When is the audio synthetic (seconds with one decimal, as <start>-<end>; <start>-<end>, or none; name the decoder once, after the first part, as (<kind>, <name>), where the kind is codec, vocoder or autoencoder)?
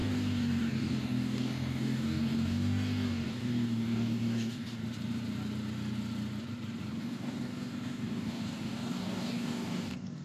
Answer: 0.0-4.8 (codec, DAC); 7.0-10.2